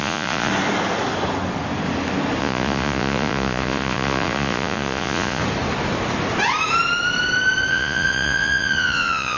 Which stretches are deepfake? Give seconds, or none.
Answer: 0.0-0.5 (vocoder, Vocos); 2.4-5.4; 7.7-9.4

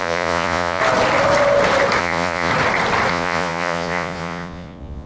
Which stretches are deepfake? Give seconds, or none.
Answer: 0.0-0.8 (vocoder, Vocos); 2.0-2.5; 3.1-5.1

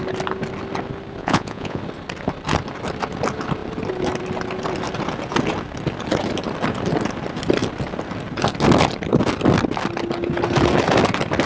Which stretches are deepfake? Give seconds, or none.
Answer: 1.2-1.8 (vocoder, Vocos)

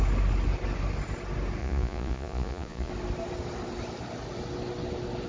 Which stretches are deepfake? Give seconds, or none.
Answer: 1.6-2.9 (vocoder, Vocos)